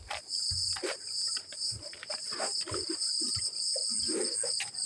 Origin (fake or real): real